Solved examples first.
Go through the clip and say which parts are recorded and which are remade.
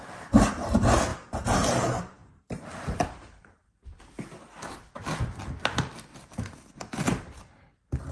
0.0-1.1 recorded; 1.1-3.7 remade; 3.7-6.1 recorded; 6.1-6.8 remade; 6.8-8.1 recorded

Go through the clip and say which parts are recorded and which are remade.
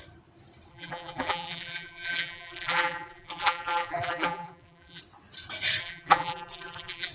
0.0-0.7 recorded; 0.7-5.0 remade; 5.0-5.8 recorded; 5.8-7.1 remade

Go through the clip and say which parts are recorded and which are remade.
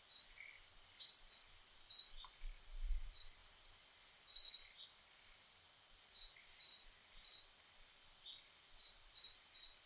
0.0-9.9 recorded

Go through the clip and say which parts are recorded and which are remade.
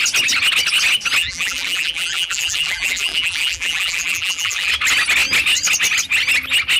0.0-1.2 recorded; 1.2-4.7 remade; 4.7-6.8 recorded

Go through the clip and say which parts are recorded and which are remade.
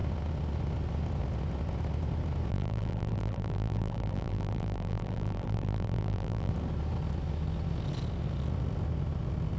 0.0-2.5 recorded; 2.5-6.5 remade; 6.5-9.6 recorded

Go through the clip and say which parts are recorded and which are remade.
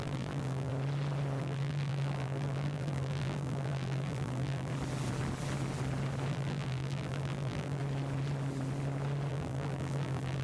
0.0-0.7 remade; 0.7-1.4 recorded; 1.4-4.7 remade; 4.7-6.3 recorded; 6.3-7.8 remade; 7.8-9.3 recorded; 9.3-10.4 remade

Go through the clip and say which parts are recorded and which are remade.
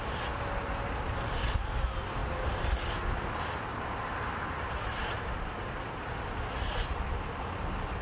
0.0-3.7 recorded; 3.7-4.9 remade; 4.9-8.0 recorded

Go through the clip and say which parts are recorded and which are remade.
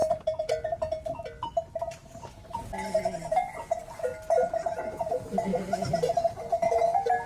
0.0-0.5 remade; 0.5-2.0 recorded; 2.0-2.6 remade; 2.6-5.5 recorded; 5.5-6.4 remade; 6.4-7.3 recorded